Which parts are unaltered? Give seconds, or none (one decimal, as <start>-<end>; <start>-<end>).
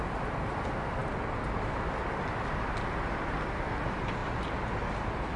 0.0-5.4